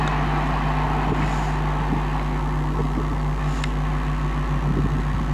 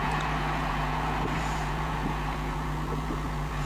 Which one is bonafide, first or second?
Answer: first